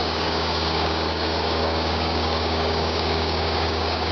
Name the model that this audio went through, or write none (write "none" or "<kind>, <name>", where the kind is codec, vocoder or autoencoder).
codec, DAC